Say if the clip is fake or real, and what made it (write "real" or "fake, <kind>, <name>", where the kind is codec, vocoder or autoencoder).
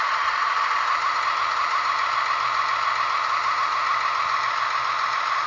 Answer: real